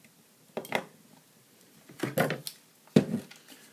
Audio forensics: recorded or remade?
recorded